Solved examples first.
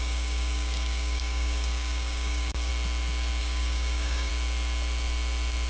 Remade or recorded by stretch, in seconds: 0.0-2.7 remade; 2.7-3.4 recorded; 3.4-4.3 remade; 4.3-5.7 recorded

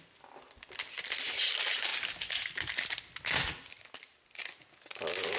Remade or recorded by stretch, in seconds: 0.0-5.4 recorded

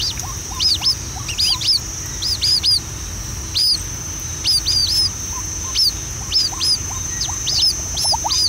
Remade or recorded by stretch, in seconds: 0.0-8.5 recorded

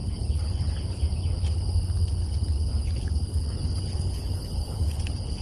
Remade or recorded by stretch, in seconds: 0.0-0.7 remade; 0.7-2.2 recorded; 2.2-5.4 remade

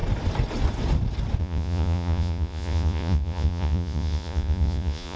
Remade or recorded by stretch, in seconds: 0.0-1.4 recorded; 1.4-5.2 remade

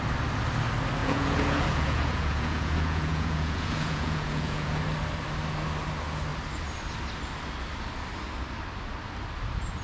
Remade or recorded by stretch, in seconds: 0.0-1.0 recorded; 1.0-4.8 remade; 4.8-9.8 recorded